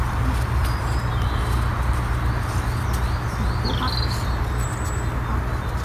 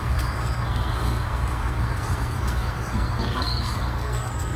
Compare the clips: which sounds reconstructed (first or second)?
second